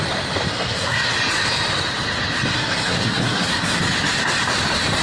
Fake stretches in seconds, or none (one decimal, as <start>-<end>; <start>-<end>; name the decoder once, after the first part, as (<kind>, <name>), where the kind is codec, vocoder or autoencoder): 0.5-1.1 (codec, SNAC); 2.5-3.8